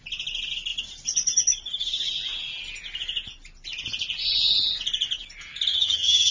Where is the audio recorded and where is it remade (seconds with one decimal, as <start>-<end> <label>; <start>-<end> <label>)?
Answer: 0.0-5.7 recorded; 5.7-6.3 remade